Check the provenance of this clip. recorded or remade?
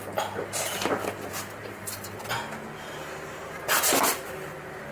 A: recorded